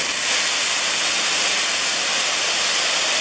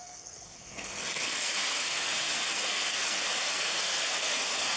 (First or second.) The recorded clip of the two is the first